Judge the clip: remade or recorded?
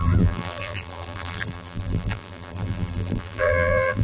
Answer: remade